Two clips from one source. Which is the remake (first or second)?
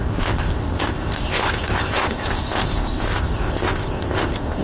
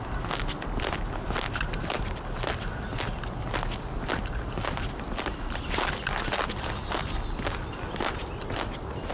first